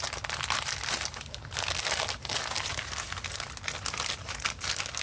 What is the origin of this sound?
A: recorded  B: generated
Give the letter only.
A